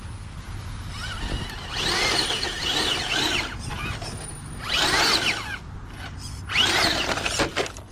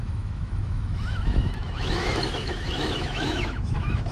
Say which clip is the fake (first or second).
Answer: second